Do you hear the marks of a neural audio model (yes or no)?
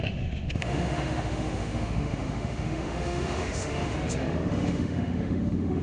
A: yes